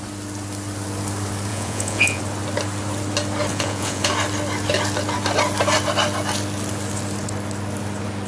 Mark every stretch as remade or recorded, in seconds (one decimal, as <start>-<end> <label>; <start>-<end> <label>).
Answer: 0.0-1.5 recorded; 1.5-2.2 remade; 2.2-3.5 recorded; 3.5-4.1 remade; 4.1-8.3 recorded